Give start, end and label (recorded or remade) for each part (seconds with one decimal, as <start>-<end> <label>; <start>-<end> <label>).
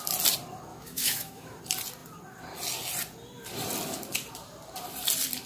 0.0-0.7 recorded; 0.7-1.6 remade; 1.6-5.5 recorded